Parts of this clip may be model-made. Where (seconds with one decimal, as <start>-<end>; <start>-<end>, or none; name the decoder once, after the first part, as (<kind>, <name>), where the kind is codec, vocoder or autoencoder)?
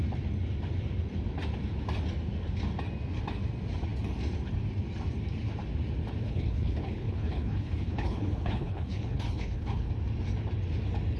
6.2-9.9 (codec, HILCodec)